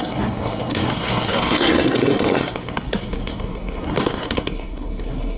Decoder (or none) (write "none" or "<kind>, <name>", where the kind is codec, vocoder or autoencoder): codec, SNAC